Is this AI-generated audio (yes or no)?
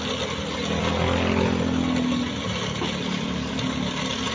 no